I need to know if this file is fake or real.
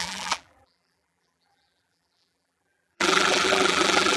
fake